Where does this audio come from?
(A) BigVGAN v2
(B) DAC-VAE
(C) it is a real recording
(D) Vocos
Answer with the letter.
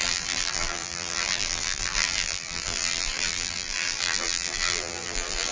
A